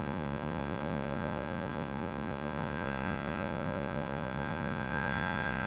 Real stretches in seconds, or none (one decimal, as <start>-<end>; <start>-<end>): none